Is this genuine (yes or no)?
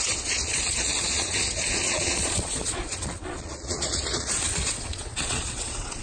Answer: no